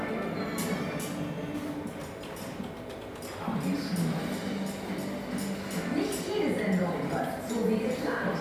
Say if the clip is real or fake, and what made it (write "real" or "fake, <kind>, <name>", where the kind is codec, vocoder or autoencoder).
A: real